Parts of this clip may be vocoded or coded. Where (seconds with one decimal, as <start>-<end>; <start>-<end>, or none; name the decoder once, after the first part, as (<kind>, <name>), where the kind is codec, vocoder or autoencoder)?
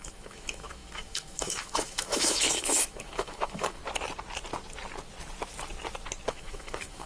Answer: 0.0-3.8 (autoencoder, DAC-VAE); 6.3-7.1